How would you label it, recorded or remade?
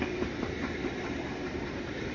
remade